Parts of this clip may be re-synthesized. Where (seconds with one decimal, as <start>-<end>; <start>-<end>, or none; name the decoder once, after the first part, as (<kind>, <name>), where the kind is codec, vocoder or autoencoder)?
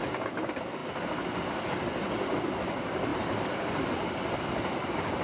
3.1-3.6 (vocoder, BigVGAN v2)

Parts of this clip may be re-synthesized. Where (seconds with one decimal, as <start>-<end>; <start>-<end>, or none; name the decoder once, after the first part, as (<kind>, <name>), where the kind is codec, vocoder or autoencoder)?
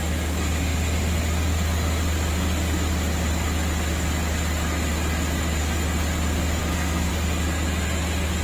6.6-7.1 (codec, SNAC)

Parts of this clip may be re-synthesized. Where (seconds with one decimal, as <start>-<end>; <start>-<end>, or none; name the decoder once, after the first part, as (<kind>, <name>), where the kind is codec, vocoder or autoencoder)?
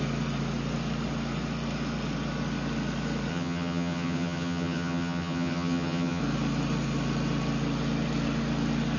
3.3-6.2 (vocoder, HiFi-GAN)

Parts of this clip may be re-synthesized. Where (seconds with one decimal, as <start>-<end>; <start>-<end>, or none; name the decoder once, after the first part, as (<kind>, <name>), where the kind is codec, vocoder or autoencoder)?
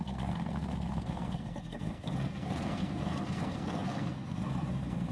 0.0-5.1 (codec, SNAC)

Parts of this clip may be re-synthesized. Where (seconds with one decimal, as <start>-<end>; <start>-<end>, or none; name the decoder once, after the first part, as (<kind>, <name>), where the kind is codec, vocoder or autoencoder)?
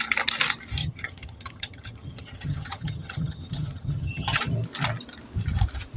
0.8-4.4 (vocoder, HiFi-GAN)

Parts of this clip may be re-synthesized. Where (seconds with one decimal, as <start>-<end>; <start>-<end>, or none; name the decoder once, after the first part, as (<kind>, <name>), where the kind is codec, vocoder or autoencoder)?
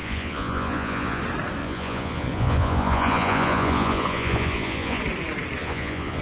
0.0-1.2 (vocoder, Vocos); 1.6-5.0; 5.6-6.2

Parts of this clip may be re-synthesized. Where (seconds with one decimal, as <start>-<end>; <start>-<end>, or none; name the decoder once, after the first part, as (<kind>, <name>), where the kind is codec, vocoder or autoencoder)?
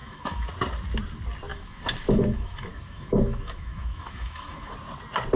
0.0-0.5 (autoencoder, DAC-VAE); 1.5-4.7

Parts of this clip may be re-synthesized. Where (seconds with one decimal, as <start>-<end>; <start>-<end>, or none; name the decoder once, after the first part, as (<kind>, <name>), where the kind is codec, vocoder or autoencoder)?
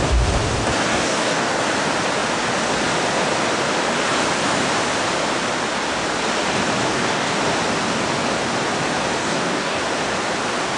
0.9-1.6 (codec, DAC); 6.8-7.4; 9.2-9.8